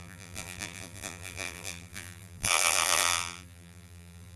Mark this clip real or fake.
fake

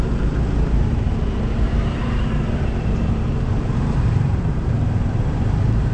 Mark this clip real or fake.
fake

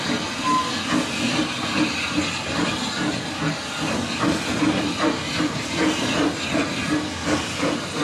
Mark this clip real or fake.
real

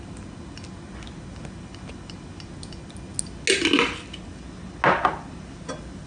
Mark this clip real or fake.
real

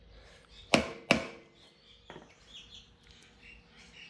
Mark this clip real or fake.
real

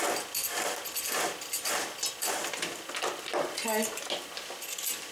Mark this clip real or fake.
real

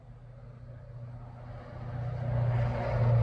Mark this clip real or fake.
real